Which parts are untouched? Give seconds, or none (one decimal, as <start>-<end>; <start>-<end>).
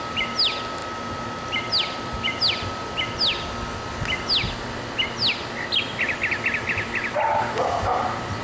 0.0-8.4